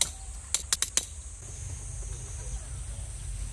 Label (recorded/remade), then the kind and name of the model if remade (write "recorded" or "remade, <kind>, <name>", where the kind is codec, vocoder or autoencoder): recorded